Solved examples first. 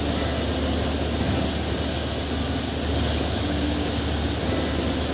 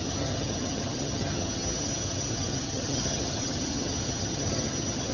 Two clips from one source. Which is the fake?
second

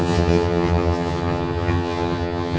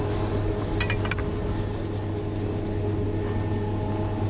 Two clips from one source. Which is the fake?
first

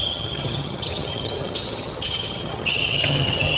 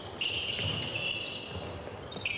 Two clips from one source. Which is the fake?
first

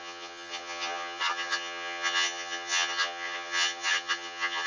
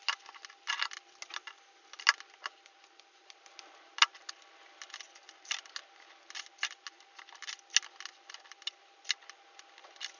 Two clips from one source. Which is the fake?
first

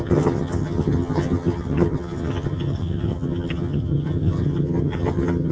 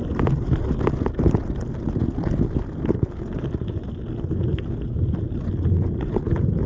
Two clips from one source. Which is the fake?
first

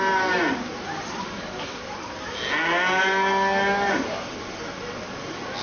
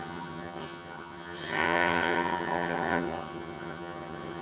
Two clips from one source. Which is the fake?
second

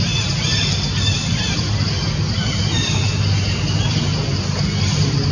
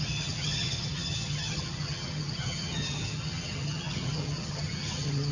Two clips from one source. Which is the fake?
second